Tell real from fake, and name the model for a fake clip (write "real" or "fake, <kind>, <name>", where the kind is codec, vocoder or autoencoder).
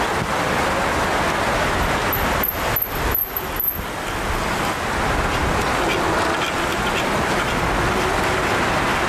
real